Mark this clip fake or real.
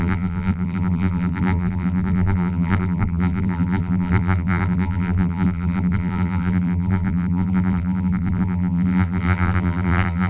fake